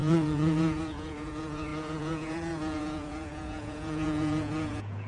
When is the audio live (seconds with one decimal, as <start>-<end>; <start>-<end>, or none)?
none